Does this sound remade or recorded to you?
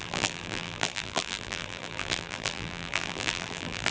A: remade